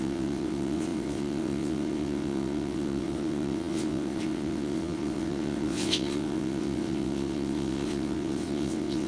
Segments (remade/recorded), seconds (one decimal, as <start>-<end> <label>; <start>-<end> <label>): 0.0-9.1 remade